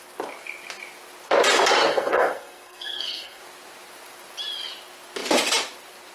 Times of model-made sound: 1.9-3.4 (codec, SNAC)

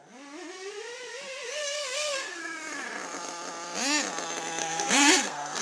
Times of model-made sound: 1.5-2.4 (codec, SNAC); 4.6-5.6

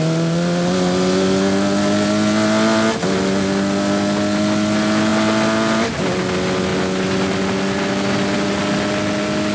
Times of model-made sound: none

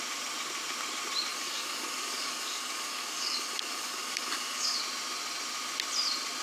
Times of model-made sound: 1.3-4.8 (codec, DAC)

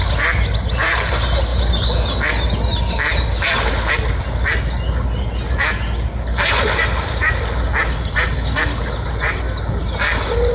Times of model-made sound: none